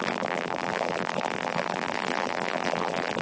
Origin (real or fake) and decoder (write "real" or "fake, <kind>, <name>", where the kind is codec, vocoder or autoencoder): fake, vocoder, BigVGAN v2